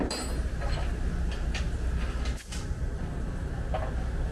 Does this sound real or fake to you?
real